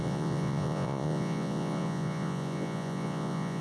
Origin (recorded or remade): remade